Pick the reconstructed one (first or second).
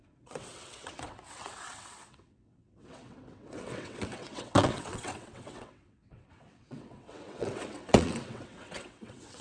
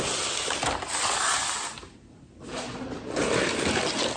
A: first